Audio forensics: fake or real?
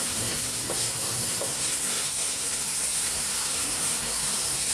fake